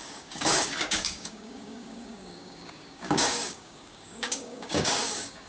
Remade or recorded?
remade